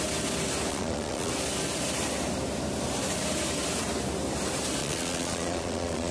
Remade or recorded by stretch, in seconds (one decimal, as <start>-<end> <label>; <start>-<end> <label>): 0.0-0.7 recorded; 0.7-1.3 remade; 1.3-4.8 recorded; 4.8-6.1 remade